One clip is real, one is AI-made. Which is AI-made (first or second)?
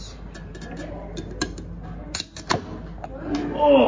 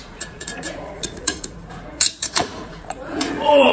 second